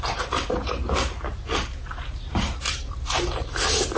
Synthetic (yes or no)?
yes